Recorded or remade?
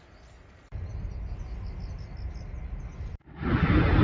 recorded